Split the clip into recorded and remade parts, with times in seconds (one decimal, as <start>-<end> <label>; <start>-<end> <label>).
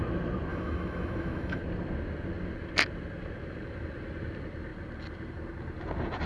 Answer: 0.0-0.5 recorded; 0.5-1.6 remade; 1.6-6.3 recorded